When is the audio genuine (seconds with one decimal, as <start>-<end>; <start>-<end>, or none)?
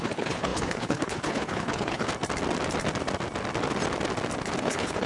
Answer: 2.1-4.6